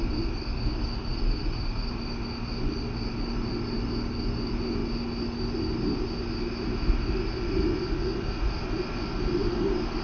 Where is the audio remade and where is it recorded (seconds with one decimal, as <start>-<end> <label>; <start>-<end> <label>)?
0.0-10.0 recorded

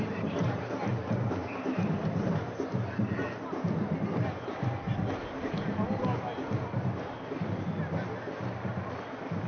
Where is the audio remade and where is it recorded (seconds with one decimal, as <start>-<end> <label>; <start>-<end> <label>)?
0.0-9.5 recorded

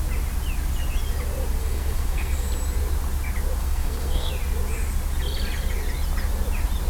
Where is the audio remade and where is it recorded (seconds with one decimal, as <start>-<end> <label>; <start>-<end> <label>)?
0.0-1.6 recorded; 1.6-2.5 remade; 2.5-3.6 recorded; 3.6-4.3 remade; 4.3-6.9 recorded

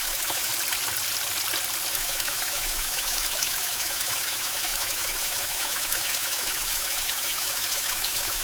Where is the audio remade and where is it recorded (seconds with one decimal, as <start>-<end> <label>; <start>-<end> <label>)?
0.0-0.5 remade; 0.5-1.9 recorded; 1.9-8.4 remade

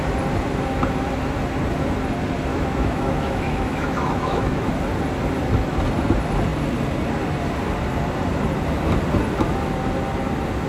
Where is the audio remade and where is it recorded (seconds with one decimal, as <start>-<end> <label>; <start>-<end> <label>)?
0.0-2.5 recorded; 2.5-4.7 remade; 4.7-10.7 recorded

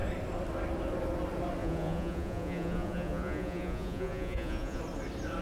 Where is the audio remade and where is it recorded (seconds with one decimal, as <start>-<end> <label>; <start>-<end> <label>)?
0.0-1.6 recorded; 1.6-4.8 remade; 4.8-5.4 recorded